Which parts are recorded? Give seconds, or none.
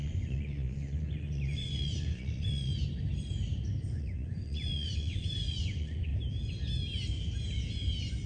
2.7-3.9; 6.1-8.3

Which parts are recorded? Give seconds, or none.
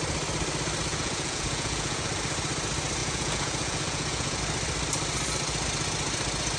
0.0-0.9; 2.1-3.0; 4.4-6.6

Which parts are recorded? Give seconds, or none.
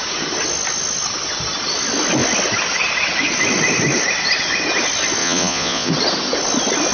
0.0-5.2; 5.9-6.9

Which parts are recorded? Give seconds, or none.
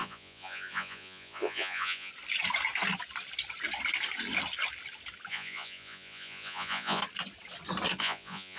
2.1-5.3; 7.0-8.0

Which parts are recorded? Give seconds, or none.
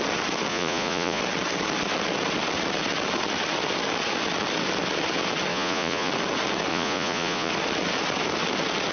0.0-0.5; 1.2-5.5; 6.1-6.7; 7.5-8.9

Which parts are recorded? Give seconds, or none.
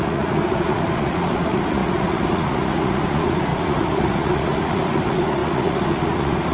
none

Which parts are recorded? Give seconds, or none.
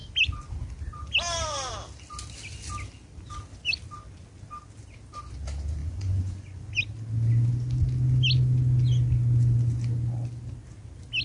0.0-5.8; 6.7-11.2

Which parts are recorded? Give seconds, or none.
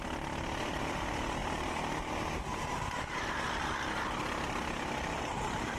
0.0-5.8